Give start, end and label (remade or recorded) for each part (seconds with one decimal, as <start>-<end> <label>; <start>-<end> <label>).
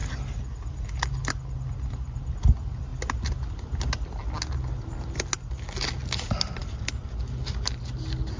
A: 0.0-8.4 recorded